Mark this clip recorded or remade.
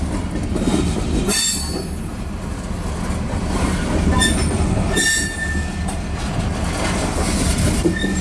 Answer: recorded